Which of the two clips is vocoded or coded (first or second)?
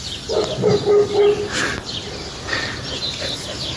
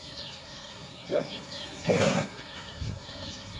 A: second